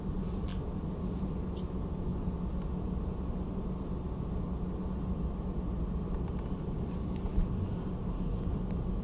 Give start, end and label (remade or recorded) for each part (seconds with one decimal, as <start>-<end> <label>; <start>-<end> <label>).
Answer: 0.0-9.0 recorded